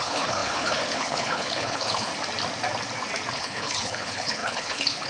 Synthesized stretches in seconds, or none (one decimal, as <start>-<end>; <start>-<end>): 0.0-2.1; 3.3-5.1